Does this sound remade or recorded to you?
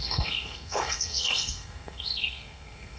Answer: remade